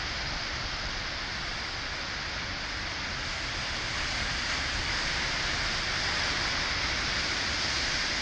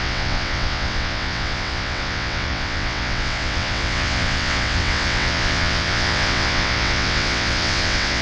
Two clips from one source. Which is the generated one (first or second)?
second